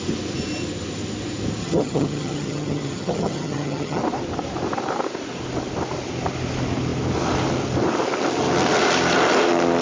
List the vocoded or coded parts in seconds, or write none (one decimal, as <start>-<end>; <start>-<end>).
1.6-4.0